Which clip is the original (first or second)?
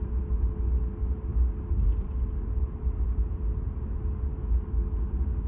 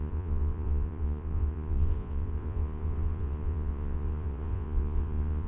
first